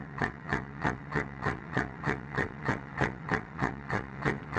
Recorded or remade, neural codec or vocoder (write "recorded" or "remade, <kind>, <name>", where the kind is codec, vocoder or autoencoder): remade, vocoder, WaveNeXt